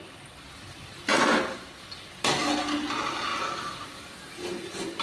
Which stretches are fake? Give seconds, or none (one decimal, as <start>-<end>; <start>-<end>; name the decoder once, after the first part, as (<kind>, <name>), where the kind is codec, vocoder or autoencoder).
none